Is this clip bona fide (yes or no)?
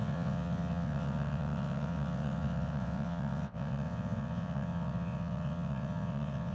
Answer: no